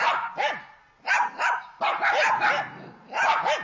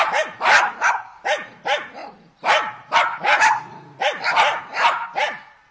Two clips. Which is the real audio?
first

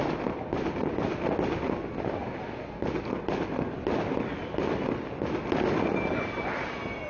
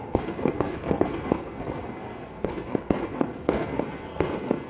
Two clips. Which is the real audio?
first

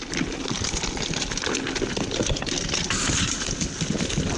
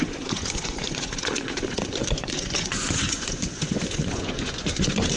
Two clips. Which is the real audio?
first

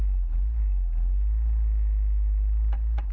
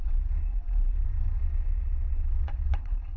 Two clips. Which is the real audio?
first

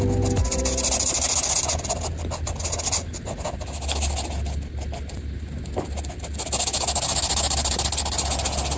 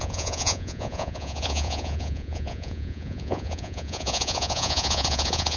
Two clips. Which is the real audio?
first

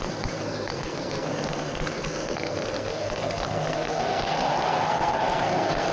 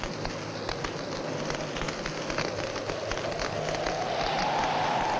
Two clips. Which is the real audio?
second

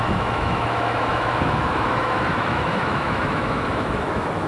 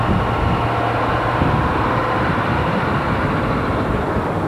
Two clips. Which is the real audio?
second